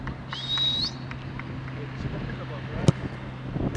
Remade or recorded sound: recorded